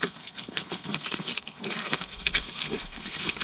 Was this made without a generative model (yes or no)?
no